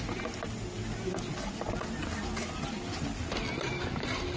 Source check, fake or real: real